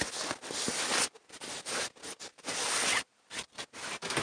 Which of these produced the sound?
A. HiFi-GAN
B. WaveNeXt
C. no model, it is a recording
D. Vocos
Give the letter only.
C